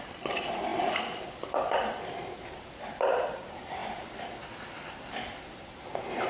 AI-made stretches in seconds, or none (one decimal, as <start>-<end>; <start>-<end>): 0.0-0.7; 1.4-6.3